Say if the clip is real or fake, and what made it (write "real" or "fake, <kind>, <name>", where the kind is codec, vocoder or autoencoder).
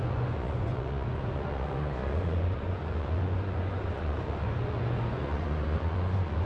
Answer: fake, vocoder, Vocos